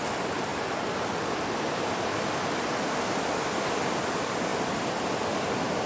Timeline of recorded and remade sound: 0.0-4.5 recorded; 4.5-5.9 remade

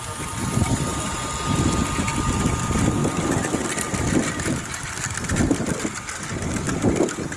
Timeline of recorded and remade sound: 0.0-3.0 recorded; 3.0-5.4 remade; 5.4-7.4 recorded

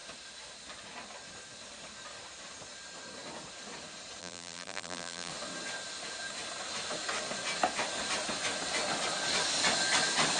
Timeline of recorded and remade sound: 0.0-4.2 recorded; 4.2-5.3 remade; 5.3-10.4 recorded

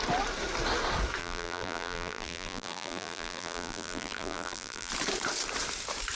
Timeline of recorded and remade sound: 0.0-1.2 recorded; 1.2-4.9 remade; 4.9-6.2 recorded

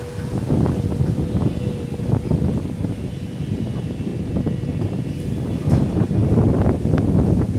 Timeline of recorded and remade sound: 0.0-4.1 recorded; 4.1-5.2 remade; 5.2-7.6 recorded